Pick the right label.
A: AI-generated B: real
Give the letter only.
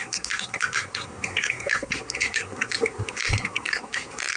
A